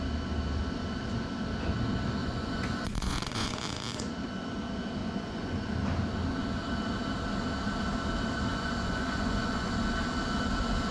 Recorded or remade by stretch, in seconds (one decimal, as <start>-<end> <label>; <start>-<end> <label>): 0.0-2.2 recorded; 2.2-3.5 remade; 3.5-5.0 recorded; 5.0-5.6 remade; 5.6-8.5 recorded; 8.5-9.7 remade; 9.7-10.9 recorded